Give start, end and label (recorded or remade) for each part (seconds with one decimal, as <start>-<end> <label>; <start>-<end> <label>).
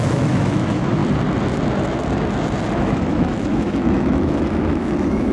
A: 0.0-1.0 remade; 1.0-2.7 recorded; 2.7-5.3 remade